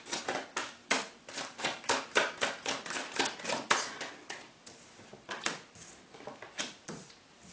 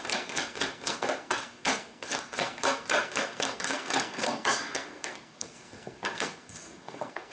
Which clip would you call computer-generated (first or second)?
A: second